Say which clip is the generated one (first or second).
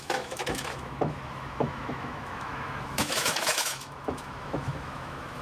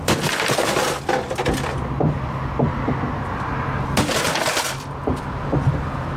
first